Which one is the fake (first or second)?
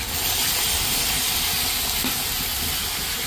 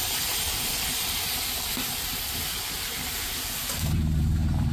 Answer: second